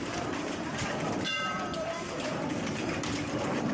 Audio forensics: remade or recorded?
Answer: remade